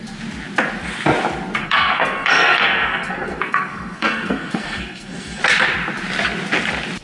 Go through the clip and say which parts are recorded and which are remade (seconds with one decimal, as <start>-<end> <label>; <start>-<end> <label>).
0.0-1.6 recorded; 1.6-5.4 remade; 5.4-7.0 recorded